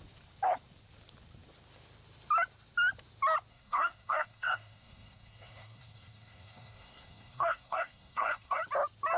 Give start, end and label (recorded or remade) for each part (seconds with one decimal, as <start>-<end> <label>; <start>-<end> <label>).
0.0-3.5 recorded; 3.5-8.6 remade; 8.6-9.2 recorded